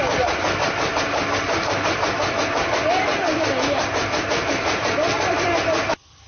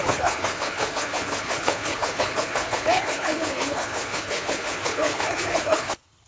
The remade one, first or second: second